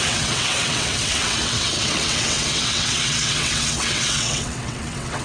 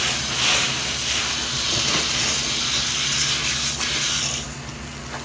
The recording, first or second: second